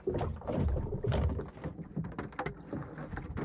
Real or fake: real